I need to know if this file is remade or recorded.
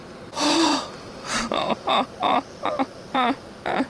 remade